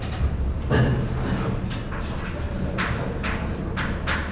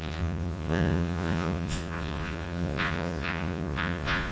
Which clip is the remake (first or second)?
second